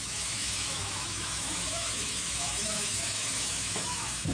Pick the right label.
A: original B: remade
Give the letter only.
B